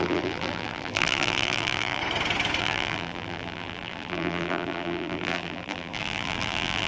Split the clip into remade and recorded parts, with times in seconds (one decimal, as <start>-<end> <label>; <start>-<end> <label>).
0.0-2.0 remade; 2.0-2.6 recorded; 2.6-6.9 remade